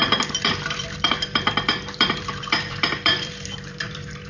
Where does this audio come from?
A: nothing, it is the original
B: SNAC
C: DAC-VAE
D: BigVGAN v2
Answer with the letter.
D